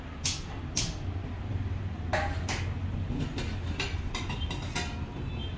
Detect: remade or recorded recorded